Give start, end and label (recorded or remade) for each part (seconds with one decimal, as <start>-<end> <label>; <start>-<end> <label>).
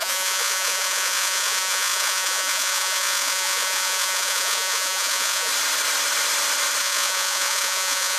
0.0-5.5 remade; 5.5-6.8 recorded; 6.8-8.2 remade